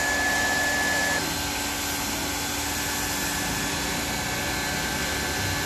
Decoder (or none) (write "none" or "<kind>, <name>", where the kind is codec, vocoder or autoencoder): none